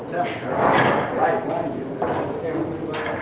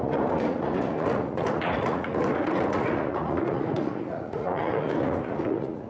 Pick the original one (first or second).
first